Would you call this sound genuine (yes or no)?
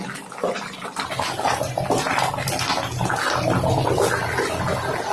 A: yes